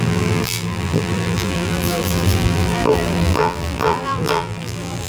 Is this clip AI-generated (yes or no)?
yes